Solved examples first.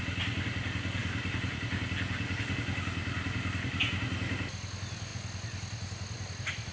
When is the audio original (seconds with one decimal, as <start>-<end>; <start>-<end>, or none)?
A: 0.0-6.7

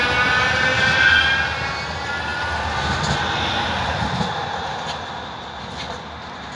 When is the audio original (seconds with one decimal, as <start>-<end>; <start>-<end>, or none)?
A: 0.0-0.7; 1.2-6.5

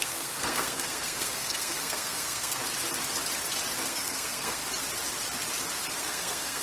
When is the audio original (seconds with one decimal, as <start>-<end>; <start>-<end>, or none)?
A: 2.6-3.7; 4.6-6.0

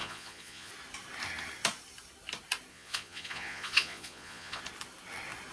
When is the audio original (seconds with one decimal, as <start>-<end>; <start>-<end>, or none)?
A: 0.7-2.7; 4.6-5.5

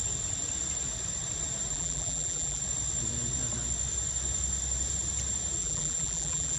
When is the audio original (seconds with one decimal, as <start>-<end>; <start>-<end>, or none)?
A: 0.0-1.7; 2.6-5.6